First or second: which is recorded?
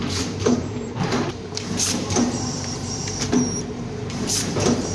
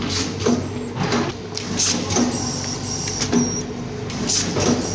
second